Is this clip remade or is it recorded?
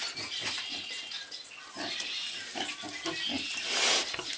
recorded